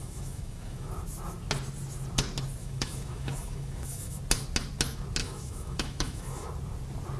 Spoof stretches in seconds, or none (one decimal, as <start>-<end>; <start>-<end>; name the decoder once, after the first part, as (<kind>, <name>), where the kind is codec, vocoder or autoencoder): 0.0-0.9 (autoencoder, DAC-VAE); 2.6-4.2; 5.2-6.5